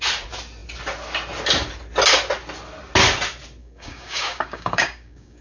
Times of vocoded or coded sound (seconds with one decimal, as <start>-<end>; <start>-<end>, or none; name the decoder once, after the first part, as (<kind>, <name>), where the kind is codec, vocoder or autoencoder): 3.6-5.4 (codec, DAC)